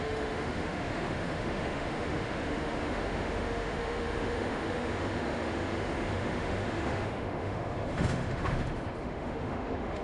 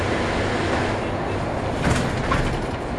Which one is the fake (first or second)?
first